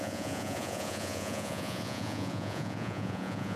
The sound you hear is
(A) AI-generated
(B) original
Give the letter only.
A